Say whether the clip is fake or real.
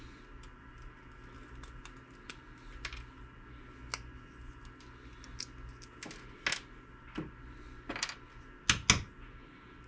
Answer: real